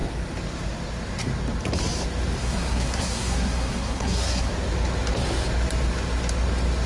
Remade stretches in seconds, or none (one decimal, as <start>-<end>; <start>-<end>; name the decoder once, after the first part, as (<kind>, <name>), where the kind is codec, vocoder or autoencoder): 2.4-4.5 (codec, SNAC)